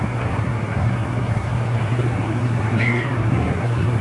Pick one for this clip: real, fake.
fake